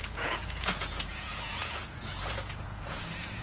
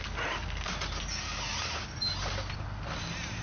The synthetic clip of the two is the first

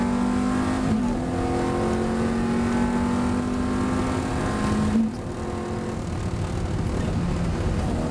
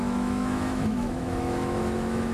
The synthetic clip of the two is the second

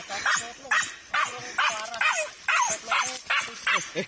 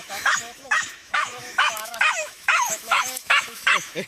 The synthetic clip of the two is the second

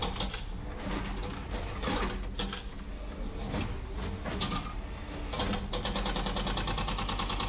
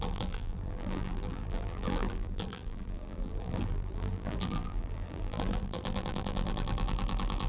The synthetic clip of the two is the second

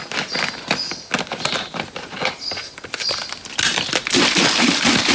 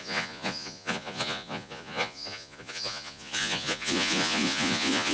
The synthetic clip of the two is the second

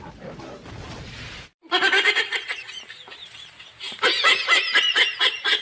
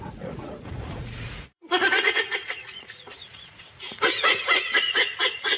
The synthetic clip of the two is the second